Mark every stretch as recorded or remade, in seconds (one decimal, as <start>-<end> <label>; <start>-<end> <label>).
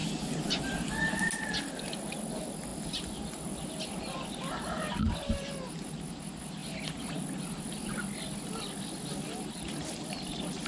0.0-10.7 recorded